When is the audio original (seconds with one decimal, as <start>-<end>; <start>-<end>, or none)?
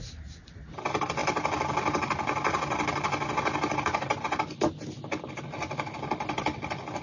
0.0-7.0